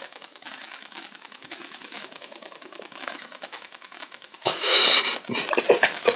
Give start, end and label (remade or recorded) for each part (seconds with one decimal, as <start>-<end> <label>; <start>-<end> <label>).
0.0-4.8 remade; 4.8-5.8 recorded; 5.8-6.2 remade